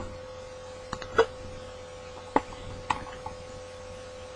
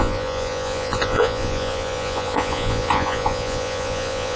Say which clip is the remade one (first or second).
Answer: second